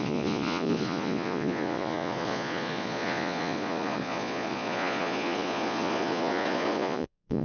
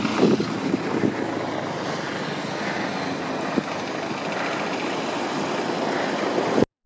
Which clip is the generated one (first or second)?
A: first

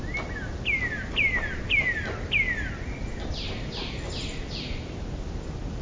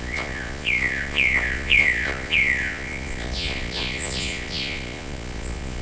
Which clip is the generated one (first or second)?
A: second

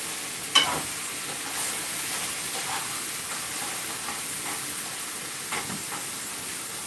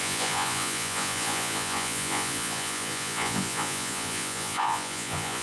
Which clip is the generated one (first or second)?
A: second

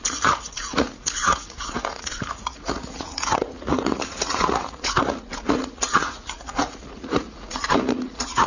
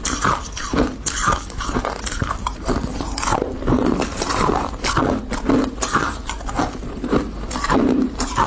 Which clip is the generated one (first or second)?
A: first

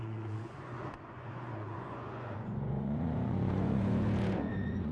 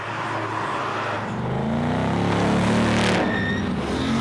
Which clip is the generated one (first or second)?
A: first